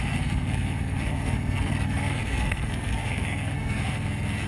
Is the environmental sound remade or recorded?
remade